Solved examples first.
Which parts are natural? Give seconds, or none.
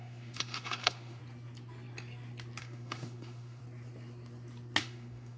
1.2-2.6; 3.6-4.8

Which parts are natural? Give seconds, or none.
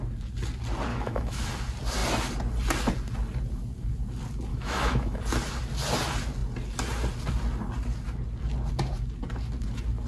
0.0-0.9; 1.5-4.5; 5.2-10.1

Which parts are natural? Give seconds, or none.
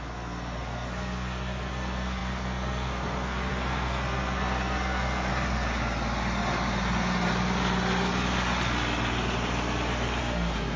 5.3-10.2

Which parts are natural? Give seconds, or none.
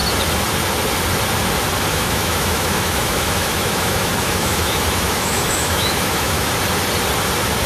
0.0-1.9; 6.5-7.7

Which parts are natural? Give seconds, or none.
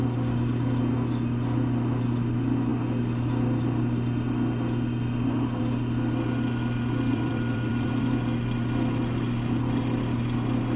0.0-7.1; 8.1-10.8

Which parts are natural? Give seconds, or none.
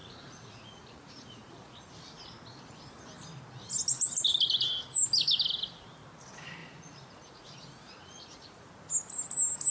1.9-6.6; 8.7-9.7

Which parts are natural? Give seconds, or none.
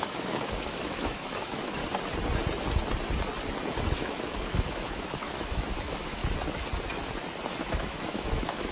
1.8-3.9; 6.2-7.7